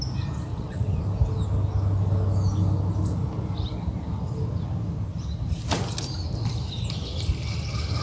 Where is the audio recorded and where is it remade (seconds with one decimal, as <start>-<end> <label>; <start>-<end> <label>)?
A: 0.0-0.5 recorded; 0.5-1.0 remade; 1.0-8.0 recorded